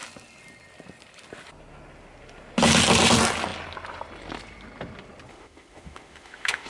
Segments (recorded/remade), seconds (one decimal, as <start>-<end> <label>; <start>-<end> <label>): 0.0-5.3 recorded; 5.3-6.7 remade